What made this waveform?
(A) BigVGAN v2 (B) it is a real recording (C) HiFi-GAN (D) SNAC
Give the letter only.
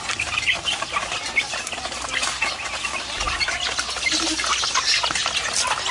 B